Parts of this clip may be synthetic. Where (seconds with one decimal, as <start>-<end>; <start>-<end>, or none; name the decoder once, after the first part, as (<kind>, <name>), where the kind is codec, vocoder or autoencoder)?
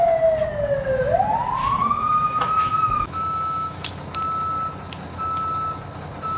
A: 1.6-3.9 (autoencoder, DAC-VAE)